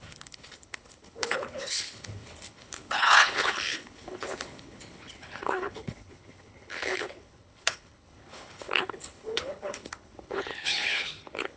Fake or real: fake